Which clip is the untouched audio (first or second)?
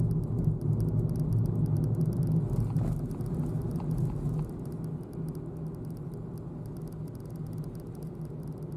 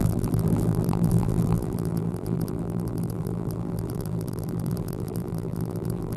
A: first